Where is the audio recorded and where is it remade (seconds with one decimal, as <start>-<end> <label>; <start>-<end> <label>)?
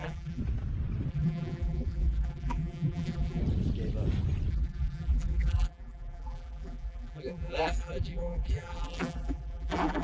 0.0-0.4 remade; 0.4-1.1 recorded; 1.1-3.4 remade; 3.4-4.5 recorded; 4.5-10.0 remade